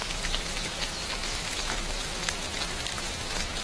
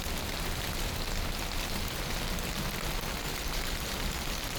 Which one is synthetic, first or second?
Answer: first